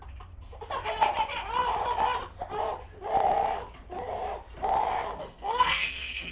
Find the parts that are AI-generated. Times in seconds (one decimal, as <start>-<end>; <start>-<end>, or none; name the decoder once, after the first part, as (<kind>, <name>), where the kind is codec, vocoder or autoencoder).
5.2-6.3 (codec, SNAC)